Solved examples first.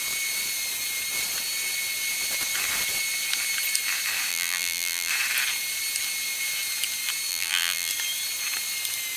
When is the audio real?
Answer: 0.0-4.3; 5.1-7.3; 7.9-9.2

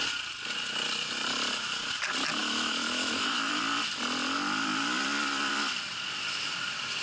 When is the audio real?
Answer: 0.0-2.4; 3.6-7.0

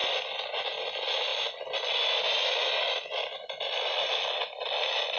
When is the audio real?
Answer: 0.0-5.2

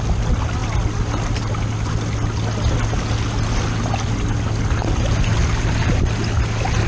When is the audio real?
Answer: 0.0-6.9

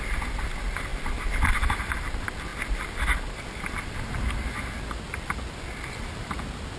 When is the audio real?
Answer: 0.0-6.8

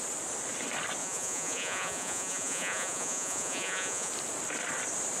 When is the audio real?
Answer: 0.0-1.0; 4.1-5.2